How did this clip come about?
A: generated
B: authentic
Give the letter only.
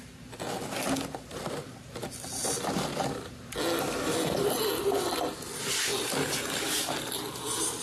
B